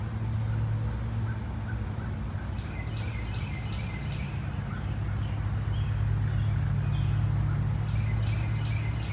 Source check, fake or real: real